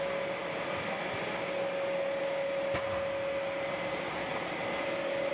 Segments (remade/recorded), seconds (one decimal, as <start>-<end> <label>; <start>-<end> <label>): 0.0-5.3 recorded